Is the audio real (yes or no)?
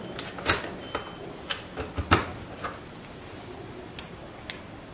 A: yes